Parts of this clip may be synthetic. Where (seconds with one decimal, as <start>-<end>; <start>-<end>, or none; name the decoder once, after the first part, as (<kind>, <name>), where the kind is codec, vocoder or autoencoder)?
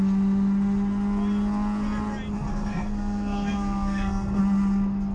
2.5-4.4 (codec, SNAC)